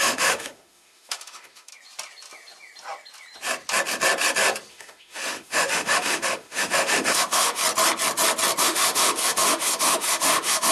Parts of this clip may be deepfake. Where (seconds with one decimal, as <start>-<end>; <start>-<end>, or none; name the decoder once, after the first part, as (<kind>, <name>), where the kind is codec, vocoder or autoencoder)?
0.0-1.7 (autoencoder, DAC-VAE); 4.7-7.6; 8.6-10.7